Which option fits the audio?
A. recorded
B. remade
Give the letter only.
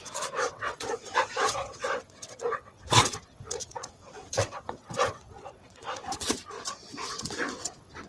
B